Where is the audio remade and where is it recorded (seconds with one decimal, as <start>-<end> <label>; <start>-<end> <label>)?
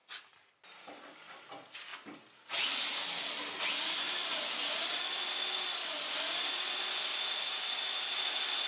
0.0-8.7 recorded